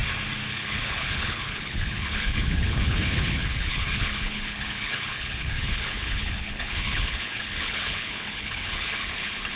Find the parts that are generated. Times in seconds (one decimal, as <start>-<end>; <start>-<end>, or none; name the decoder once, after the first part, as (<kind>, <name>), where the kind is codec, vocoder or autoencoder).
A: 0.5-9.6 (codec, HILCodec)